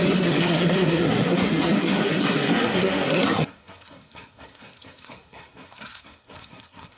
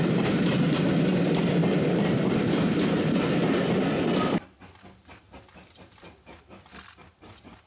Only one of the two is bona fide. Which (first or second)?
second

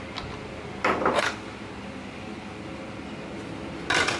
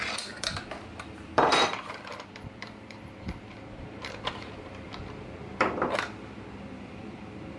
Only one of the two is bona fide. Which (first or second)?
first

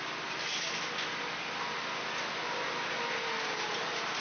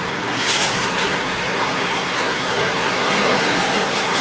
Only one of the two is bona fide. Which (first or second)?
first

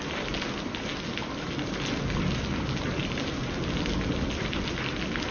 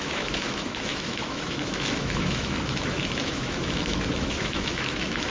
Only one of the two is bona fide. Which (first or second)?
first